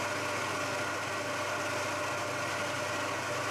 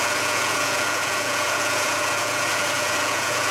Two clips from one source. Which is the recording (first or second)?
first